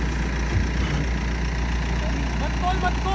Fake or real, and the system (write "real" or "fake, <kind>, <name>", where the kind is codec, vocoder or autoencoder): real